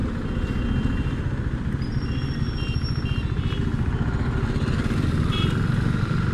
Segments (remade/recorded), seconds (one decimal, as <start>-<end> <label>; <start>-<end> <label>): 0.0-6.3 recorded